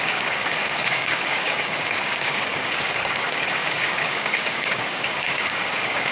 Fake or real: fake